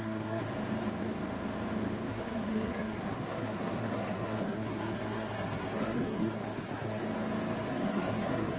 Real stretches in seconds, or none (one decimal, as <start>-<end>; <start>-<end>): 0.4-2.1; 7.0-7.7

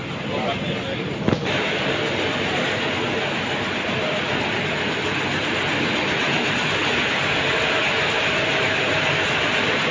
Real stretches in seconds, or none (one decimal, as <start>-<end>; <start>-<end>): 0.0-9.9

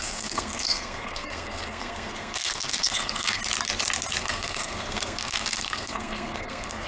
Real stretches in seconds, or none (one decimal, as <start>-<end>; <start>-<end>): 3.4-4.2

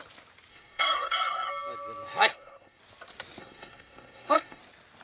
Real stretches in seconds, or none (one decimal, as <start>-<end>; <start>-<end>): 0.0-0.5; 1.5-2.3; 2.8-3.4; 4.6-5.0

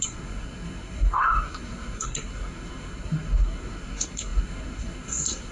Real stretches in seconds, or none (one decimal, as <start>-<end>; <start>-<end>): none

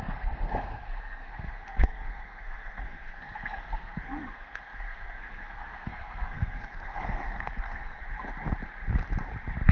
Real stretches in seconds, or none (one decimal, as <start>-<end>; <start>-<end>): 8.0-9.7

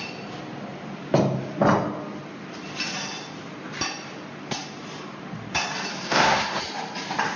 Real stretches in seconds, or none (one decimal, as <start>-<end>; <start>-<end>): 0.0-5.9; 6.6-7.4

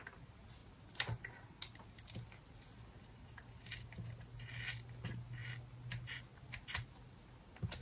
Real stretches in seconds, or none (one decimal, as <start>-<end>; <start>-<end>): 0.0-7.8